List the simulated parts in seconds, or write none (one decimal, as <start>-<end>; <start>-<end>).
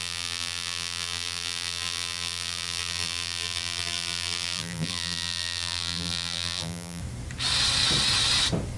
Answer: 0.0-7.0